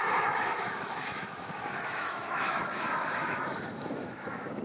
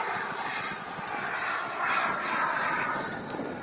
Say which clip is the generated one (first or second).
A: first